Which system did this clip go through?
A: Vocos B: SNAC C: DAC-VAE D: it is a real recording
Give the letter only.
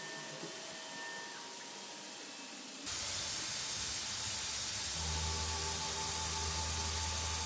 D